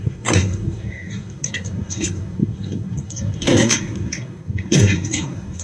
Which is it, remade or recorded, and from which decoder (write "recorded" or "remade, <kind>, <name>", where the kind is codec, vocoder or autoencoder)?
remade, codec, SNAC